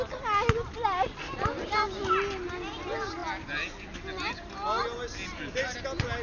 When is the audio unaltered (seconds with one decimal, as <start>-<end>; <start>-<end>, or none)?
0.0-6.2